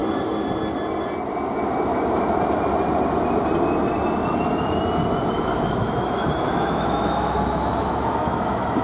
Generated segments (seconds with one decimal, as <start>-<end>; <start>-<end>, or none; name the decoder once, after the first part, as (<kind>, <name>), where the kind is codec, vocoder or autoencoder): 5.3-8.8 (autoencoder, DAC-VAE)